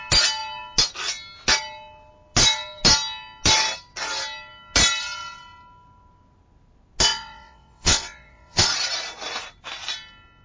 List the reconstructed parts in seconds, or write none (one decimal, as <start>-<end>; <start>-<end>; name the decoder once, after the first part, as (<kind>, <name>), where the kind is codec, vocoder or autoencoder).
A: 7.1-8.6 (vocoder, WaveNeXt)